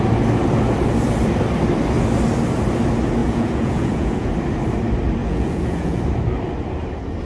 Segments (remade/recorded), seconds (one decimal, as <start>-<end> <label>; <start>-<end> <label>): 0.0-3.2 recorded; 3.2-4.3 remade; 4.3-5.2 recorded; 5.2-6.0 remade; 6.0-7.3 recorded

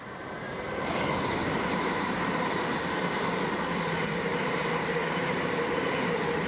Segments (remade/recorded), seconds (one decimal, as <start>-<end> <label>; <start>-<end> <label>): 0.0-1.4 recorded; 1.4-2.5 remade; 2.5-4.3 recorded; 4.3-5.6 remade; 5.6-6.5 recorded

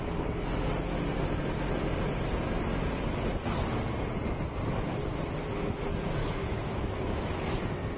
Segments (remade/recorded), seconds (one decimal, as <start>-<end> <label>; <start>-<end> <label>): 0.0-6.2 recorded; 6.2-7.6 remade; 7.6-8.0 recorded